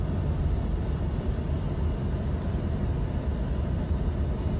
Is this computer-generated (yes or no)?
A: no